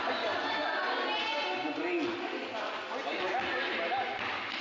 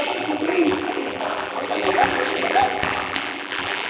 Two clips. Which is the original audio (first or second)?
first